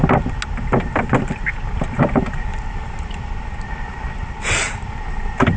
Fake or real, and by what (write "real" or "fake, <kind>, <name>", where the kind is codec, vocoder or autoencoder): real